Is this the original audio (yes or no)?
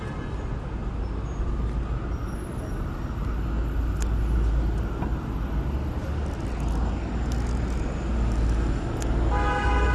yes